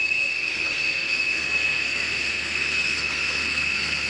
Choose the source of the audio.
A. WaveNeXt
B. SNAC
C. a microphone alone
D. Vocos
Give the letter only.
B